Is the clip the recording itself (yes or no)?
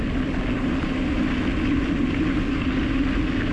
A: yes